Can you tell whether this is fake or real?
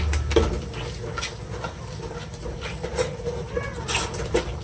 real